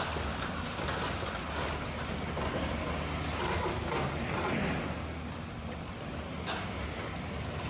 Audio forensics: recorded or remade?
recorded